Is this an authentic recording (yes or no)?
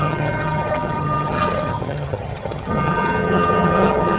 no